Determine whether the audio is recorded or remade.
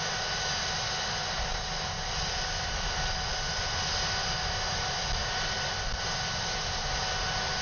recorded